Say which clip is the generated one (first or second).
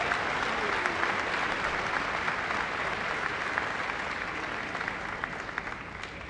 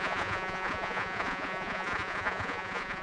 second